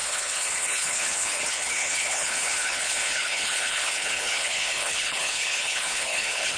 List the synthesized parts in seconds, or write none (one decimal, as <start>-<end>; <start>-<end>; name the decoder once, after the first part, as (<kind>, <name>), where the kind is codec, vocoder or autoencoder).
0.0-6.6 (codec, HILCodec)